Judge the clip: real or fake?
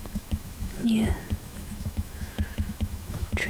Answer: fake